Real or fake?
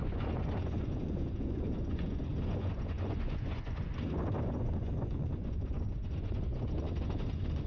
fake